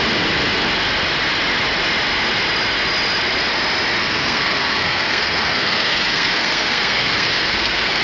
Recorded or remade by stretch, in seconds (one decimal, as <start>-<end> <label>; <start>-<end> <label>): 0.0-4.0 recorded; 4.0-8.0 remade